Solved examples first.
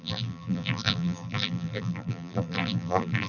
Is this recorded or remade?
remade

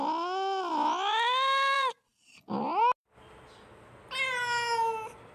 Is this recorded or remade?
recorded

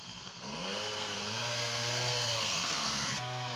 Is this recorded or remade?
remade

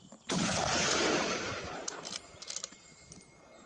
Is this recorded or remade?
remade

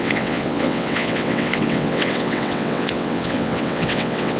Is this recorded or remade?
remade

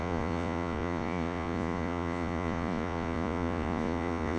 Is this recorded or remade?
remade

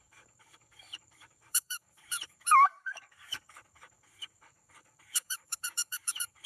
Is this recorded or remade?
remade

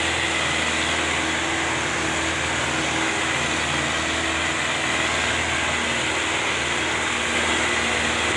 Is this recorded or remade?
recorded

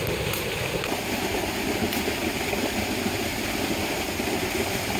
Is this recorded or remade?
recorded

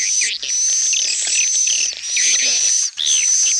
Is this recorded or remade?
recorded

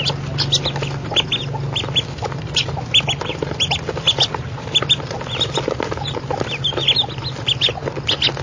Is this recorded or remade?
recorded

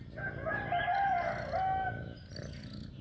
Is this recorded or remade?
recorded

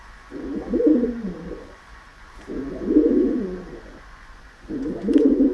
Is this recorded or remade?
remade